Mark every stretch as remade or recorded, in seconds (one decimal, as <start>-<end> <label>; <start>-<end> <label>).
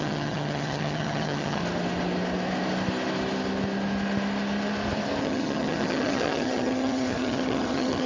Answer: 0.0-1.6 remade; 1.6-5.2 recorded; 5.2-8.1 remade